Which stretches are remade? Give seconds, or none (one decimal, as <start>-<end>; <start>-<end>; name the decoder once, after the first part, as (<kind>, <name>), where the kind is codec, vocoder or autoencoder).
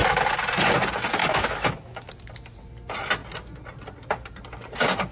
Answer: 1.2-2.1 (autoencoder, DAC-VAE)